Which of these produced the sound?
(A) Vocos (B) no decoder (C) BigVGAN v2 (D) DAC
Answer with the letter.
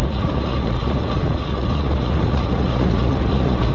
A